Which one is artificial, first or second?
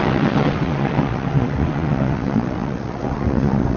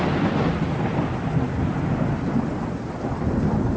first